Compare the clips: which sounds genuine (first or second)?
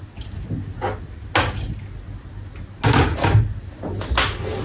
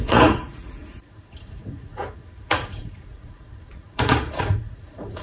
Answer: first